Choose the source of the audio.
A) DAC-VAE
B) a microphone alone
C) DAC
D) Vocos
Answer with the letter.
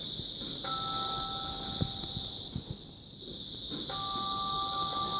B